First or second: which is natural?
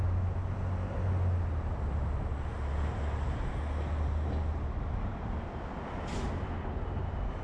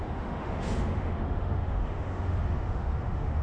first